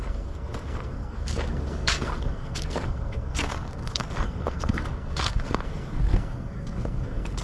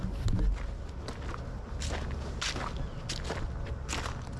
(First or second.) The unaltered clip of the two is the second